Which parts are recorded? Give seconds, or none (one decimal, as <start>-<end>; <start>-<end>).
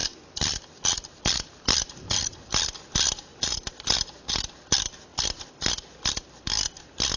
2.5-7.2